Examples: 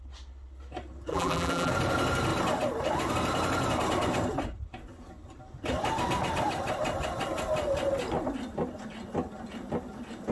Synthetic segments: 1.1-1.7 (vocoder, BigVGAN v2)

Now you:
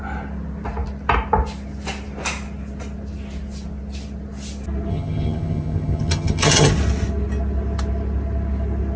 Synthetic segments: 4.9-6.7 (vocoder, HiFi-GAN)